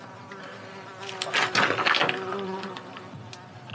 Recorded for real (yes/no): yes